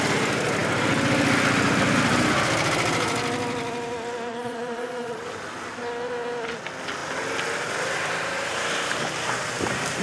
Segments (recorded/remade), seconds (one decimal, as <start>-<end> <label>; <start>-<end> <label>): 0.0-4.3 recorded; 4.3-5.2 remade; 5.2-10.0 recorded